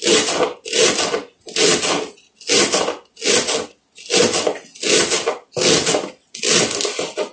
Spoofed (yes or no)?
no